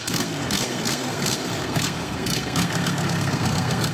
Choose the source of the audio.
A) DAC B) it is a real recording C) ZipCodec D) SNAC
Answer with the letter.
D